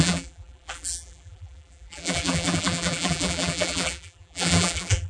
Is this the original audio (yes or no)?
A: no